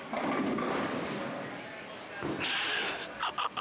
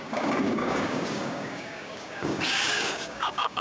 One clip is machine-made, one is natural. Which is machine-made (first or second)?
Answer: second